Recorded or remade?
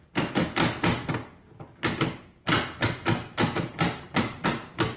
recorded